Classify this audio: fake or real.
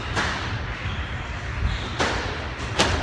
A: real